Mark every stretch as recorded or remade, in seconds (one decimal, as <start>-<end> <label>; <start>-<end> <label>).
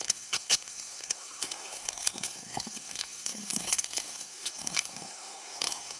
0.0-6.0 remade